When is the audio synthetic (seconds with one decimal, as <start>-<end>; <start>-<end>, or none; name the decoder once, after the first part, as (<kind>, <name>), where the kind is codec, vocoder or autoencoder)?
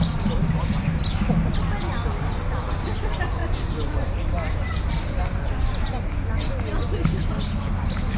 none